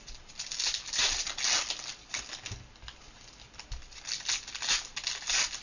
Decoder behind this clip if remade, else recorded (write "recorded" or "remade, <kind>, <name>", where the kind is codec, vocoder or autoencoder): recorded